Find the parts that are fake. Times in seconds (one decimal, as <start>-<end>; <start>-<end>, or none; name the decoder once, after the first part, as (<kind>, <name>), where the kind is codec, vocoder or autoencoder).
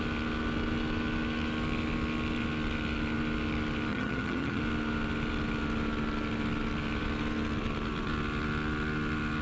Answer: 3.9-4.6 (vocoder, HiFi-GAN)